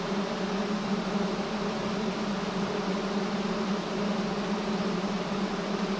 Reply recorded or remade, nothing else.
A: recorded